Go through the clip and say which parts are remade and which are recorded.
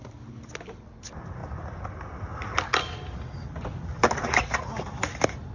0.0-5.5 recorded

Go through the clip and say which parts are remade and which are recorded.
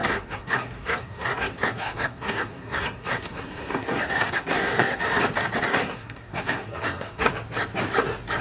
0.0-5.0 remade; 5.0-5.7 recorded; 5.7-7.3 remade; 7.3-8.4 recorded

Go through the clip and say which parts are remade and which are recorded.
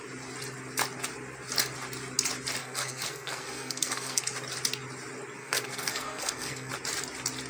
0.0-2.6 recorded; 2.6-4.2 remade; 4.2-5.4 recorded; 5.4-6.7 remade; 6.7-7.5 recorded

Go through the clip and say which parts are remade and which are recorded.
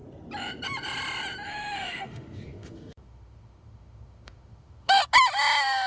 0.0-1.5 recorded; 1.5-5.0 remade; 5.0-5.9 recorded